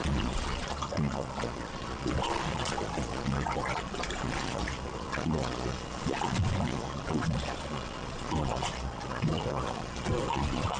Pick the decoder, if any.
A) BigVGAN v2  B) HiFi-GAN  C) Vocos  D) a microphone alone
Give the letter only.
C